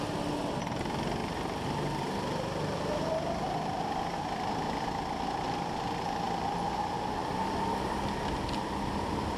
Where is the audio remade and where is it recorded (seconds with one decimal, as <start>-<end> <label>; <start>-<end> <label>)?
0.0-1.2 recorded; 1.2-3.1 remade; 3.1-9.4 recorded